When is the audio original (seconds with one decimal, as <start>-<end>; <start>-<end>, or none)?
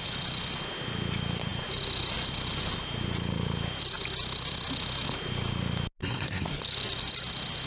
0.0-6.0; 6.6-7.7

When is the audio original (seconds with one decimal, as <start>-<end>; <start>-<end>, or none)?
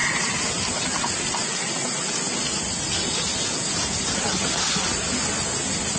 0.0-6.0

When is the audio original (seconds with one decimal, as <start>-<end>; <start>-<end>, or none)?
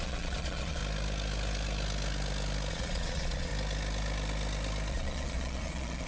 0.8-2.7; 3.5-4.9